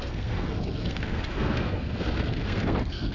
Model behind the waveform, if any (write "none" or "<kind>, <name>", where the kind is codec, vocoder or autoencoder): codec, SNAC